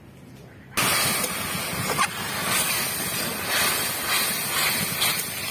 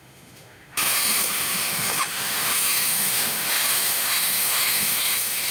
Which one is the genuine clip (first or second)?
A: first